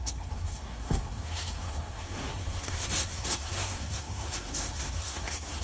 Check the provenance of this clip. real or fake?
fake